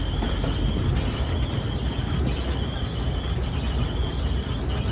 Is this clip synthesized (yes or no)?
no